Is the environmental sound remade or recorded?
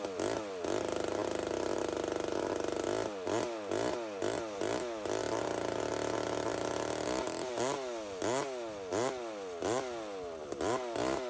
recorded